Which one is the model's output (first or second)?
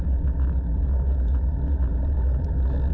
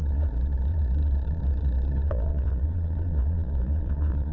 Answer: second